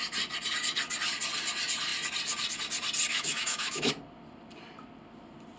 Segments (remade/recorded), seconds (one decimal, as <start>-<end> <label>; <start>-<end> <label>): 0.0-3.1 recorded; 3.1-3.9 remade; 3.9-5.6 recorded